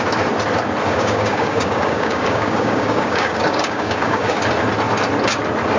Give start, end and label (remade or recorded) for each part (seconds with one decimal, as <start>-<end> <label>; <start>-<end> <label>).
0.0-0.9 recorded; 0.9-4.4 remade; 4.4-5.8 recorded